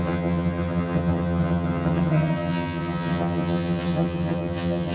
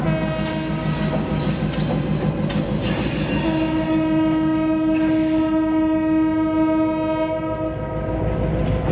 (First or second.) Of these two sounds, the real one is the second